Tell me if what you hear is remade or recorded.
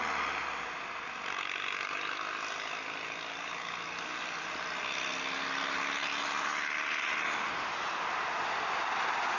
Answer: recorded